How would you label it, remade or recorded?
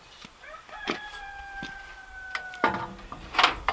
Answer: recorded